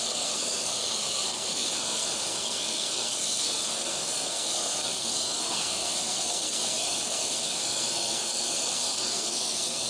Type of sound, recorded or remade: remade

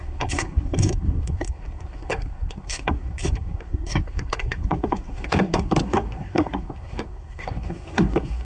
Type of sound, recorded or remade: remade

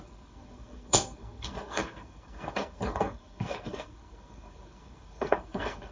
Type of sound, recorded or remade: remade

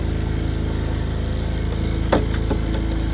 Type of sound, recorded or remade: recorded